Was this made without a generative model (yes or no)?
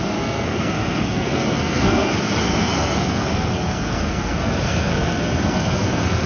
no